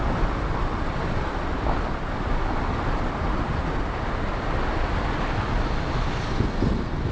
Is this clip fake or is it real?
real